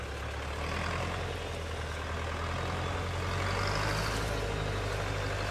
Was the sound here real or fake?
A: real